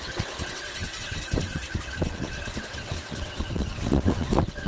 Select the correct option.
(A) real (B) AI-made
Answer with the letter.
B